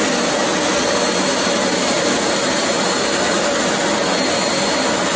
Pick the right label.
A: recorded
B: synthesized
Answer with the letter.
A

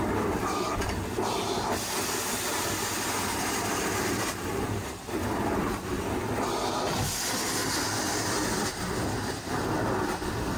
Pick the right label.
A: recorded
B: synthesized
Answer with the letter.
A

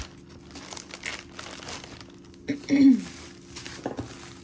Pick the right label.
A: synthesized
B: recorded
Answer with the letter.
B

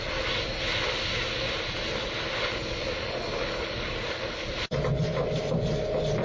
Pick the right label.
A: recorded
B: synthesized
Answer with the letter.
A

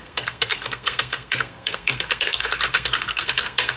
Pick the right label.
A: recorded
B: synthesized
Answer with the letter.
B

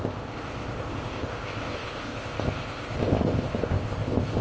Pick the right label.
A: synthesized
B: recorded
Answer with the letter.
A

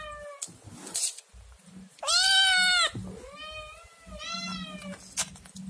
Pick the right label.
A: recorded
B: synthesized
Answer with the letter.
A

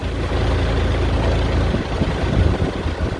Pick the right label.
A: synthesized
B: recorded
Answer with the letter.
B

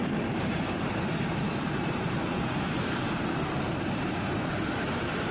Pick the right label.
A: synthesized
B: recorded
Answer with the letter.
A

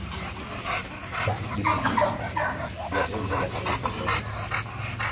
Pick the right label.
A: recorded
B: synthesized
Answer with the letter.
A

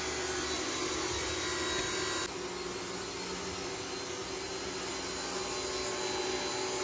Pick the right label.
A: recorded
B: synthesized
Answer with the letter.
A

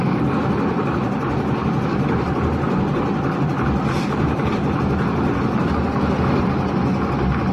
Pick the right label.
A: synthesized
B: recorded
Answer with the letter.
B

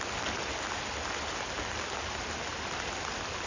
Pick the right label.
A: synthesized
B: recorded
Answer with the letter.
B